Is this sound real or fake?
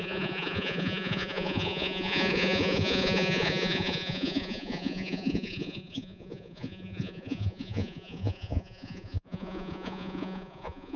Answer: fake